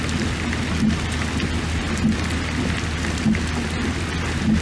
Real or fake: real